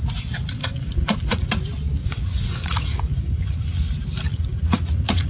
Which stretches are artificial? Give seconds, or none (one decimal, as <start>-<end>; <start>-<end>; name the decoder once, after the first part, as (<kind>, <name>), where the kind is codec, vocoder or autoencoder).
0.6-1.5 (vocoder, Vocos); 2.0-3.8; 4.3-5.3